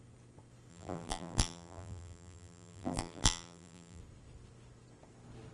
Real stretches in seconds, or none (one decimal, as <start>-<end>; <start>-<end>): 0.0-0.7; 4.0-5.5